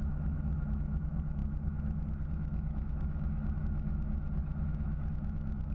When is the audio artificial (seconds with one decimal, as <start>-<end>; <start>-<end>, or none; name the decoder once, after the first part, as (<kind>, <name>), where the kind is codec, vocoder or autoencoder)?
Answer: 0.0-5.7 (autoencoder, DAC-VAE)